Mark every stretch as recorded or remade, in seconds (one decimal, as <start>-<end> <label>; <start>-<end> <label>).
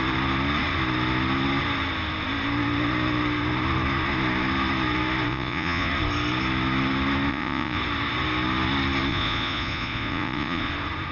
0.0-5.3 recorded; 5.3-5.9 remade; 5.9-7.3 recorded; 7.3-7.8 remade; 7.8-9.1 recorded; 9.1-10.7 remade; 10.7-11.1 recorded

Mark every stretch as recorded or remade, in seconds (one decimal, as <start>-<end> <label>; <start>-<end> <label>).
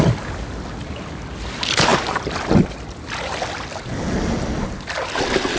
0.0-5.6 recorded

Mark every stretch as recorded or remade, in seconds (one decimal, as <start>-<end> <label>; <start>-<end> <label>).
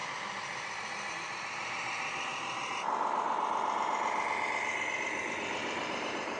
0.0-5.6 recorded; 5.6-6.4 remade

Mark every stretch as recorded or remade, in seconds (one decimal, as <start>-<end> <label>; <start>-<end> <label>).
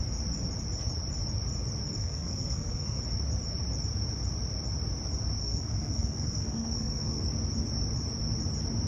0.0-2.0 recorded; 2.0-3.0 remade; 3.0-5.4 recorded; 5.4-7.2 remade; 7.2-8.9 recorded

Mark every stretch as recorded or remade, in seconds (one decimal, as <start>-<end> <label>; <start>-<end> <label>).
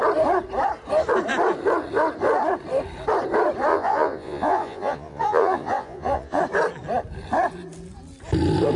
0.0-3.7 recorded; 3.7-6.4 remade; 6.4-8.8 recorded